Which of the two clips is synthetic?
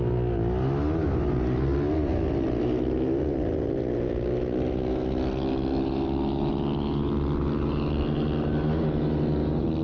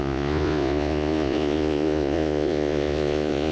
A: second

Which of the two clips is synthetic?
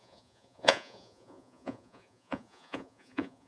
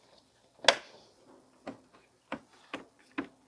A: first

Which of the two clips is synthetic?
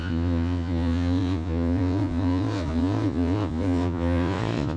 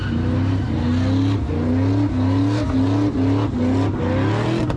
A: first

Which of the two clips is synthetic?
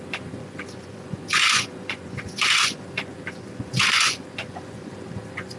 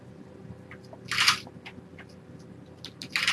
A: first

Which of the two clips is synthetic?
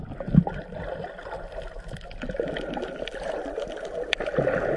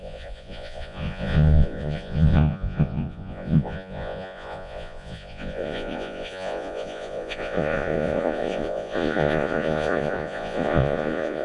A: second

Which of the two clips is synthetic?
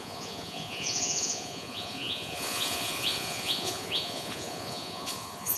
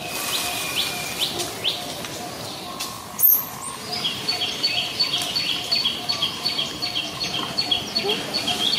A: first